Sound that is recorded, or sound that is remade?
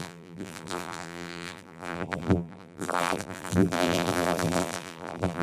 remade